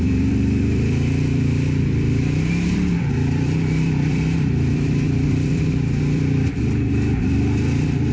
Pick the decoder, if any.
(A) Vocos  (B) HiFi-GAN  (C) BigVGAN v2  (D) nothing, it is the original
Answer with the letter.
C